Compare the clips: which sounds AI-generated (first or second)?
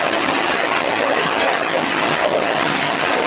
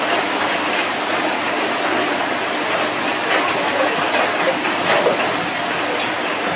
first